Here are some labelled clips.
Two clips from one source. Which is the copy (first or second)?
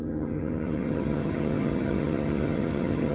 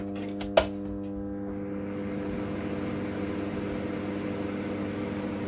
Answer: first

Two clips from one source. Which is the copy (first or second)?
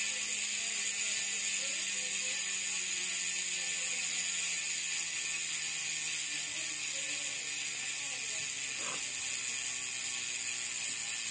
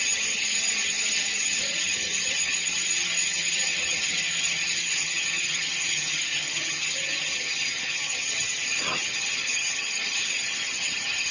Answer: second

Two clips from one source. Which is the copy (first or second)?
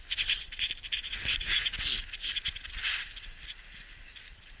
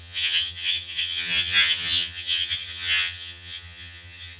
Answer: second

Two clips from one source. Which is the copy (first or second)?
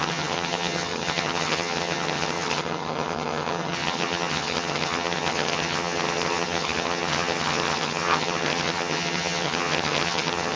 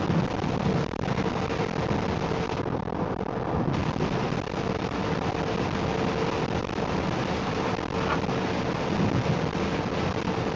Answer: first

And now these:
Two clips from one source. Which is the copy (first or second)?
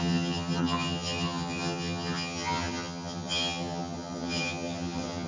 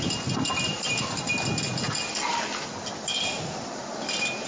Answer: first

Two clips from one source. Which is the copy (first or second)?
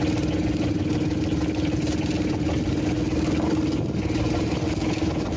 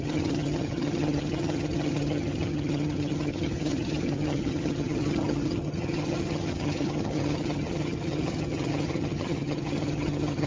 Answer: second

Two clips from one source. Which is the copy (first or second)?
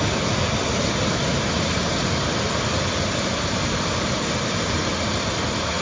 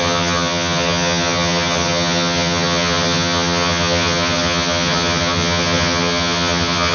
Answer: second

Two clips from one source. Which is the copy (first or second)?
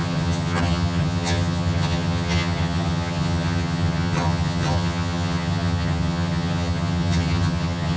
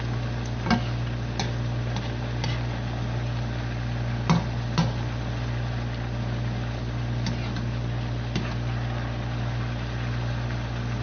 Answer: first